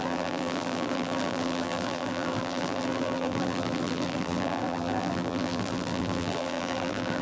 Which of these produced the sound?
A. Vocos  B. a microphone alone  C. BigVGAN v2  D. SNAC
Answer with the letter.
C